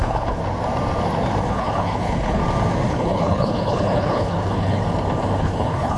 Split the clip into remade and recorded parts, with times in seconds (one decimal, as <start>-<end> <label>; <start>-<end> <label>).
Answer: 0.0-0.4 remade; 0.4-1.5 recorded; 1.5-2.4 remade; 2.4-2.9 recorded; 2.9-4.8 remade; 4.8-5.4 recorded; 5.4-6.0 remade